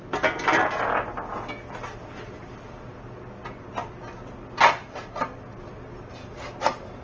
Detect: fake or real real